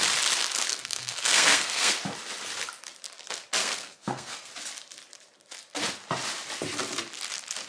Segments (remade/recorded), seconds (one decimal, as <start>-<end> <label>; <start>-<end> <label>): 0.0-0.7 recorded; 0.7-1.9 remade; 1.9-3.6 recorded; 3.6-4.5 remade; 4.5-7.7 recorded